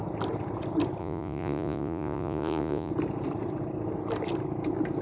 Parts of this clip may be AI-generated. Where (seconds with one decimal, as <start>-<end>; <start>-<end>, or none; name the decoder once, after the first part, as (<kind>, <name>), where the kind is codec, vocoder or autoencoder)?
1.0-2.9 (vocoder, Vocos)